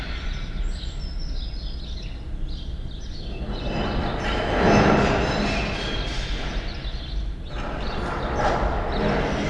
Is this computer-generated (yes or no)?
no